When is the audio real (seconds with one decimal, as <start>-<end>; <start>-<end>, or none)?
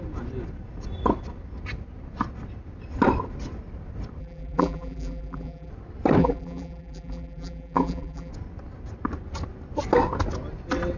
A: 0.0-4.2; 5.7-6.2; 8.3-11.0